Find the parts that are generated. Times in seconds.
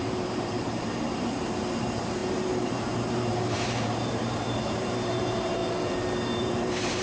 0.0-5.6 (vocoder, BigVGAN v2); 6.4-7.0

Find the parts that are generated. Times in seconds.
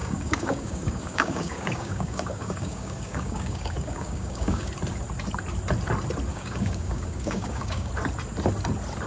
0.0-4.7 (codec, DAC); 6.3-7.9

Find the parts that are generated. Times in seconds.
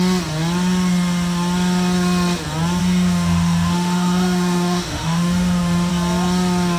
2.8-5.9 (autoencoder, DAC-VAE)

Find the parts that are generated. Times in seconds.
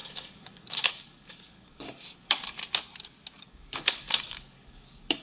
0.0-2.6 (codec, DAC); 3.4-5.2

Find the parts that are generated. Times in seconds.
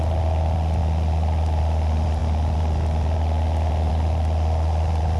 none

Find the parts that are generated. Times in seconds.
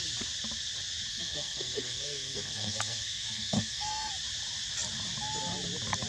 1.1-4.1 (codec, SNAC)